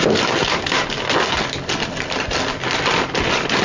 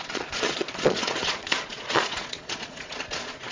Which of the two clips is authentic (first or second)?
first